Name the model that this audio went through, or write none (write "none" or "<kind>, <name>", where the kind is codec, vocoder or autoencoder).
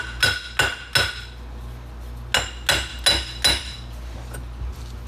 none